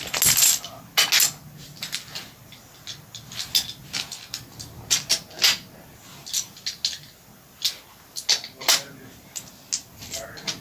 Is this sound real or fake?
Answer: real